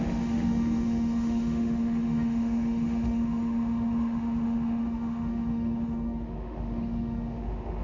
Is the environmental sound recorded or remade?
remade